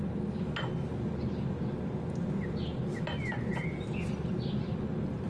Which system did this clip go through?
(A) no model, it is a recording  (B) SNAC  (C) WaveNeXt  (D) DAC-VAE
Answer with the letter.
A